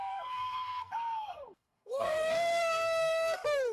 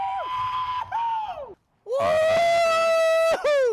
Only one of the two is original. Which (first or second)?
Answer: second